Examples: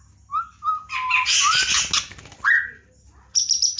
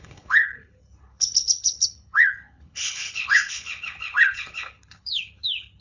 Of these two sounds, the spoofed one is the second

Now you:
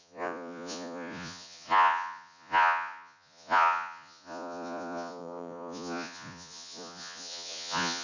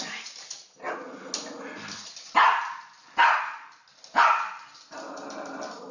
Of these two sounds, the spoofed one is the first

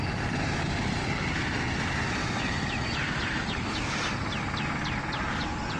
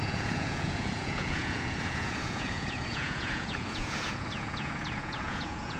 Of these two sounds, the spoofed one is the second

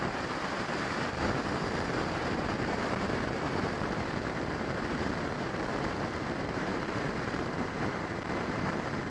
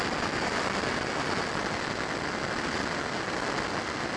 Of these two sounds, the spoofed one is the first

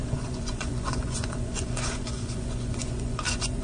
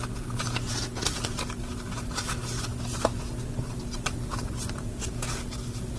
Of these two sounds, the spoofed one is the first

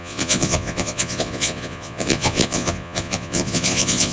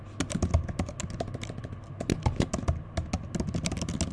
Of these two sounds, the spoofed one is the first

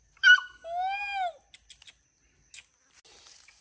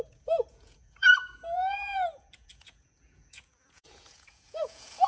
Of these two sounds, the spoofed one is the second